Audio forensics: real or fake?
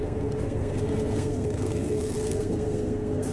fake